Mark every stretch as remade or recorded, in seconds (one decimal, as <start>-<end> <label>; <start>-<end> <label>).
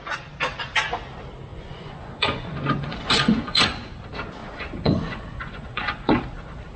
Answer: 0.0-1.5 recorded; 1.5-3.9 remade; 3.9-4.4 recorded; 4.4-6.2 remade; 6.2-6.8 recorded